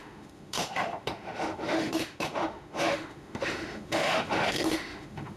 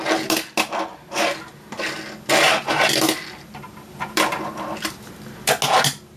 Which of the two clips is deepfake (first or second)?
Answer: first